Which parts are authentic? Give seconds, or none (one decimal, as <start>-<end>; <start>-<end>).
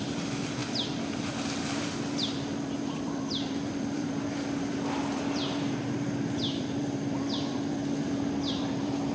none